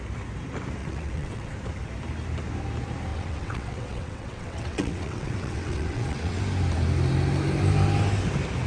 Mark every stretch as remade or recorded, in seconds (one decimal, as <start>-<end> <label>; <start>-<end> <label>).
0.0-0.8 recorded; 0.8-1.5 remade; 1.5-3.1 recorded; 3.1-6.4 remade; 6.4-8.7 recorded